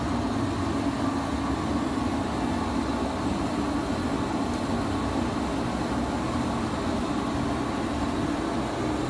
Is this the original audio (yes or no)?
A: yes